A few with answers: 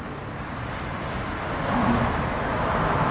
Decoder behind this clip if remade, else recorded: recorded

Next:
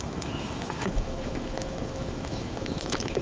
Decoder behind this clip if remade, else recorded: remade, autoencoder, DAC-VAE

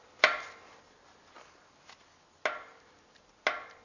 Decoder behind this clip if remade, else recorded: recorded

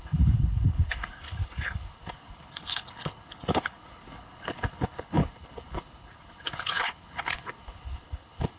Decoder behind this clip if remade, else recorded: remade, codec, HILCodec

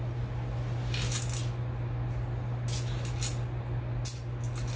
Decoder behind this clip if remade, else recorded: recorded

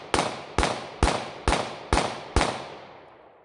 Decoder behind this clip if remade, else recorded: recorded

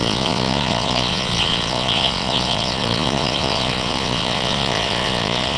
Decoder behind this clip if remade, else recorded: remade, vocoder, Vocos